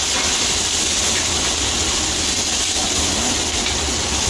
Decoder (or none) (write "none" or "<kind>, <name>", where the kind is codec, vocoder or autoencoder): none